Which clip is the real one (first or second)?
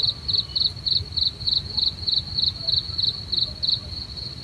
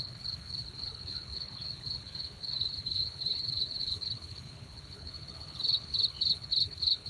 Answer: first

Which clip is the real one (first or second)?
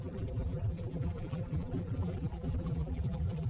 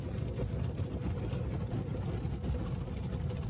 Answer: second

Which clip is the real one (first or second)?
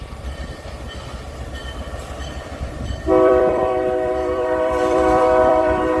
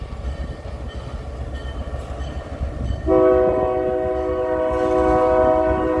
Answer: second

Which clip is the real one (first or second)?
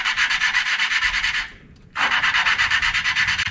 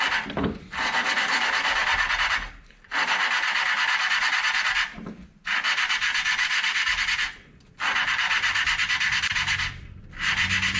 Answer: second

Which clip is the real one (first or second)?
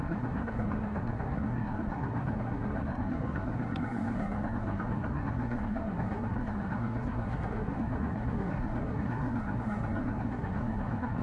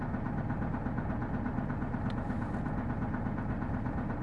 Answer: second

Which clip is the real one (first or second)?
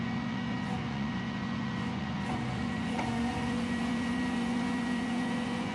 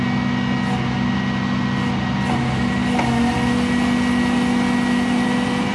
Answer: second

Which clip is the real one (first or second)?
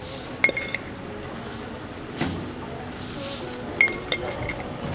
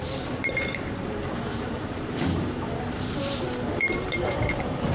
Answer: first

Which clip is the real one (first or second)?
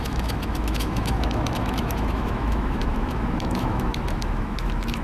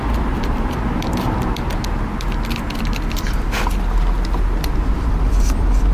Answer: second